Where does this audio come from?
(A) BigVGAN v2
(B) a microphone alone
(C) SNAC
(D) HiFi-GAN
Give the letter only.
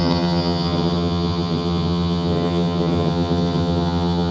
D